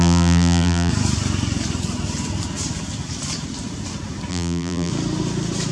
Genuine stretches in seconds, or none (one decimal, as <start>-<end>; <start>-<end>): 0.9-4.3; 4.9-5.7